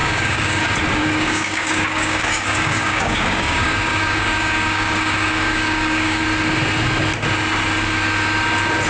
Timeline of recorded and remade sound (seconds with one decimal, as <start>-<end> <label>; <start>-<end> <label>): 0.0-0.6 remade; 0.6-1.0 recorded; 1.0-6.2 remade; 6.2-8.9 recorded